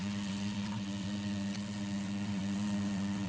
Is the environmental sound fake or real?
fake